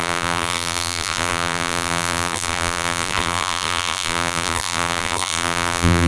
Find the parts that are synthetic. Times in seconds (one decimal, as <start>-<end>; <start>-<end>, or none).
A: 0.0-6.1